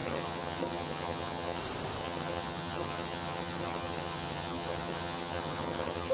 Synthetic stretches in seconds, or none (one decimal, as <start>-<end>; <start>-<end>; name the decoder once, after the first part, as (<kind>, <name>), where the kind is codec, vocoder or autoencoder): 0.0-1.6 (vocoder, HiFi-GAN); 2.0-6.1